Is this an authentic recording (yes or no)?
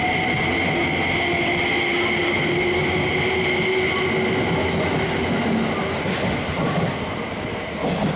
yes